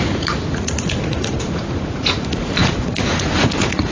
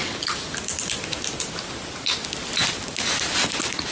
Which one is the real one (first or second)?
second